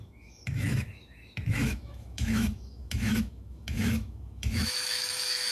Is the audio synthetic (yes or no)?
yes